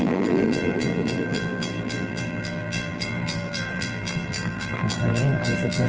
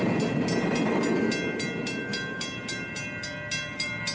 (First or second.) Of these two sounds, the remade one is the first